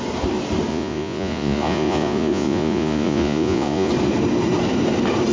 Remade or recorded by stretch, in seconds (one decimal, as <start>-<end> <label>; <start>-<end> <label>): 0.0-0.7 recorded; 0.7-3.9 remade; 3.9-5.3 recorded